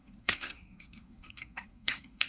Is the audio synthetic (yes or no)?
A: yes